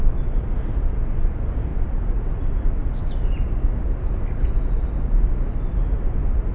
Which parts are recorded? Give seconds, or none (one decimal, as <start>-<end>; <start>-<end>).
0.0-6.5